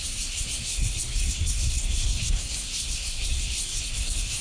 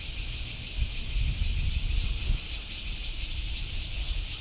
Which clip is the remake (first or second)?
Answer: first